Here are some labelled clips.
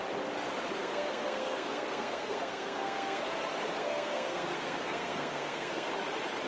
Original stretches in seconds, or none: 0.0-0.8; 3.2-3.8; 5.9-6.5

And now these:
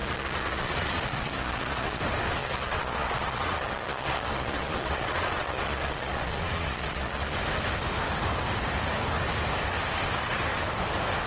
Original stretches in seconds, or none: 2.0-2.4; 7.4-11.3

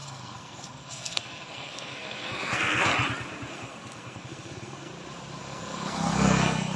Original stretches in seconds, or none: 2.9-3.5; 4.9-5.4

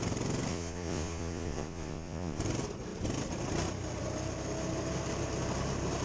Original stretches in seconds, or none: 0.0-0.5; 2.4-6.0

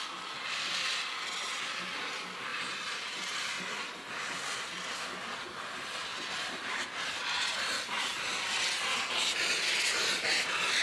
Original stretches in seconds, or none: 0.0-2.5; 3.6-6.1; 7.2-10.8

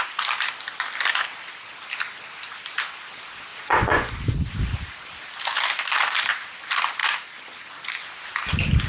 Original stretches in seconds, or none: 0.0-3.5; 4.1-8.9

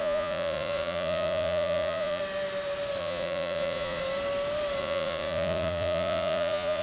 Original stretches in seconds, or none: 2.2-3.0; 4.0-4.8